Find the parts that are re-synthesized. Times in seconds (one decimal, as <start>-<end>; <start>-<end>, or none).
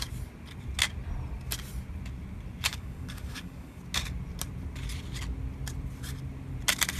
2.7-3.8